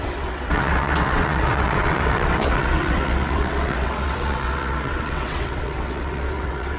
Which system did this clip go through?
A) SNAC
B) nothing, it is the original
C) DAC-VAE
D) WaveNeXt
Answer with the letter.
D